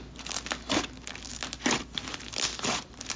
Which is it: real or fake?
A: real